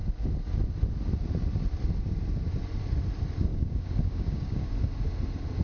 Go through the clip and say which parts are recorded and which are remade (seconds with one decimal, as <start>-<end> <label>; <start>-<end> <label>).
0.0-3.5 recorded; 3.5-4.7 remade; 4.7-5.6 recorded